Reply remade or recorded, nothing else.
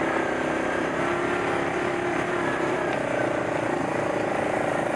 recorded